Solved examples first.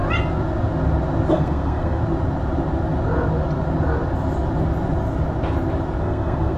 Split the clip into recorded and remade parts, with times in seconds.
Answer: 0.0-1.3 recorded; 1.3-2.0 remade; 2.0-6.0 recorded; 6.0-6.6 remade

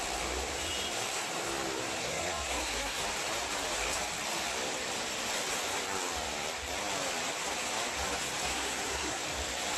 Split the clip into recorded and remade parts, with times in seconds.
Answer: 0.0-2.0 recorded; 2.0-3.0 remade; 3.0-8.4 recorded; 8.4-9.2 remade; 9.2-9.8 recorded

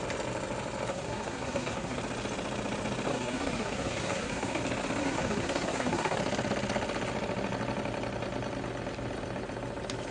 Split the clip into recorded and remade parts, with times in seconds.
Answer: 0.0-0.9 recorded; 0.9-2.0 remade; 2.0-3.1 recorded; 3.1-4.6 remade; 4.6-5.0 recorded; 5.0-6.2 remade; 6.2-10.1 recorded

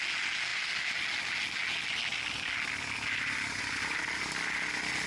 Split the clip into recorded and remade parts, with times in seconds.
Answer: 0.0-5.1 recorded

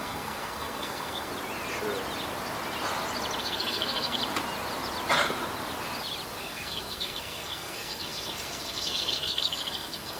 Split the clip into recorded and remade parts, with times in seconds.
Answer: 0.0-1.3 remade; 1.3-3.4 recorded; 3.4-4.2 remade; 4.2-6.4 recorded; 6.4-10.2 remade

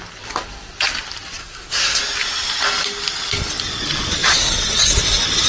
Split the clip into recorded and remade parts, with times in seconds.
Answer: 0.0-1.4 recorded; 1.4-2.0 remade; 2.0-5.5 recorded